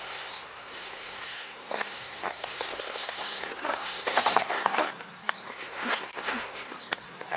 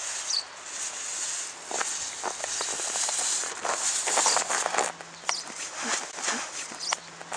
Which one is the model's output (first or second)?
first